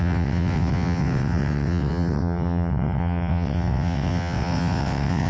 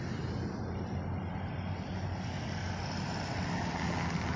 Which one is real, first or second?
second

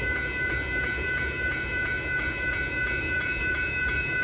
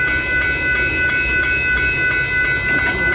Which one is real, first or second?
second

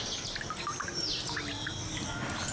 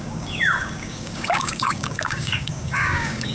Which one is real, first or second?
first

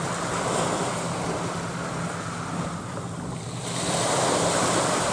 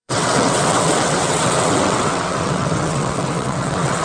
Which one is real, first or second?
first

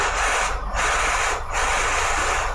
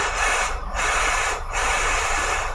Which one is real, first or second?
first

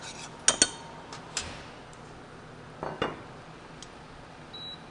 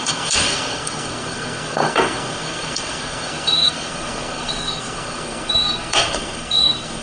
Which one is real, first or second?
first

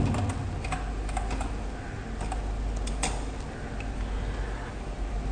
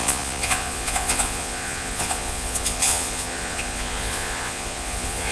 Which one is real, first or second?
first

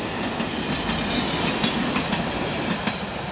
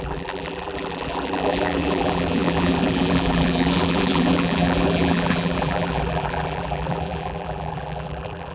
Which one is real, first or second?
first